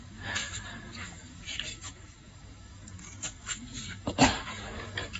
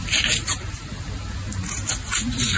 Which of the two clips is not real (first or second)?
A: first